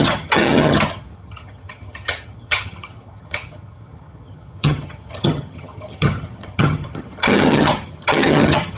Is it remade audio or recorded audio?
remade